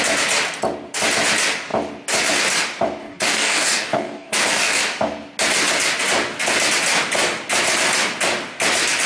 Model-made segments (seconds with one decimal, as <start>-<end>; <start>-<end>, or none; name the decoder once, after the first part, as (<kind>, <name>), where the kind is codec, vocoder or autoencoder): 3.0-4.8 (codec, DAC)